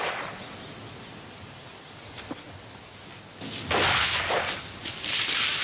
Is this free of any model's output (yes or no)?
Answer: yes